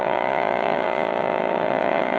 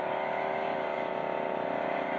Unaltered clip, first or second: second